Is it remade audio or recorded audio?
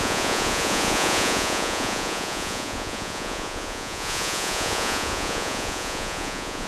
remade